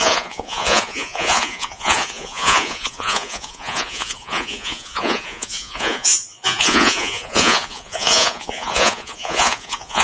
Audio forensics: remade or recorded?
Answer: remade